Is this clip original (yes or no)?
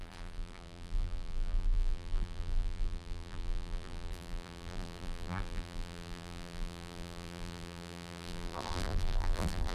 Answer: no